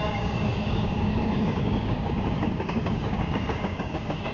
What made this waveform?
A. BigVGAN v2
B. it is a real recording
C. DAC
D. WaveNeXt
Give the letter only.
C